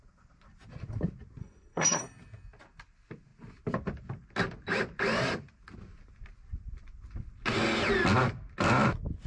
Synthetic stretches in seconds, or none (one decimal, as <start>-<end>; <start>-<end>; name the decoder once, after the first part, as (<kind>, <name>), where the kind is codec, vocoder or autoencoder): 1.4-2.0 (codec, SNAC)